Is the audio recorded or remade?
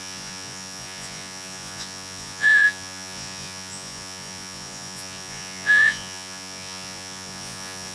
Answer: remade